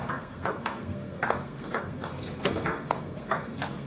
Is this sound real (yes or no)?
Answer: no